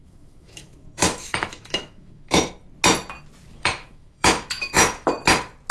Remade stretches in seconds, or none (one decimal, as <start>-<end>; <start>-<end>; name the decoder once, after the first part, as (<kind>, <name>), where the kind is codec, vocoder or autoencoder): 0.0-2.5 (autoencoder, DAC-VAE); 3.5-5.1